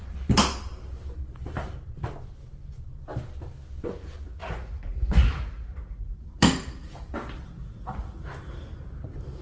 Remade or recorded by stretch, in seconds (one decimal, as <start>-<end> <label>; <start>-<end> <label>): 0.0-4.4 recorded; 4.4-6.2 remade; 6.2-9.4 recorded